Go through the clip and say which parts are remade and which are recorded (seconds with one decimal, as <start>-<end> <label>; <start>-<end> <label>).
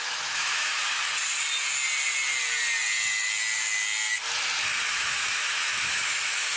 0.0-1.0 remade; 1.0-4.9 recorded; 4.9-6.6 remade